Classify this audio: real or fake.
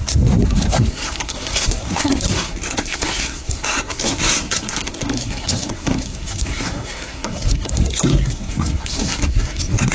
fake